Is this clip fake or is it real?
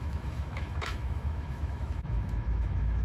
fake